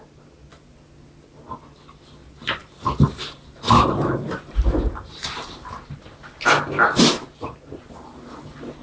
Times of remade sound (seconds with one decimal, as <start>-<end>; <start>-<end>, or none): 2.6-5.8